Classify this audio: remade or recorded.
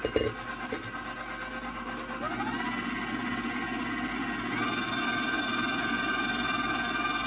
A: recorded